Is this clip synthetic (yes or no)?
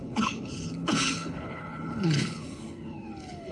yes